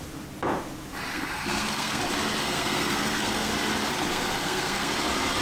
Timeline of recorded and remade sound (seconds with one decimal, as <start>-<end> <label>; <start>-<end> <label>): 0.0-1.1 recorded; 1.1-2.0 remade; 2.0-2.4 recorded; 2.4-3.5 remade; 3.5-4.1 recorded; 4.1-4.9 remade; 4.9-5.4 recorded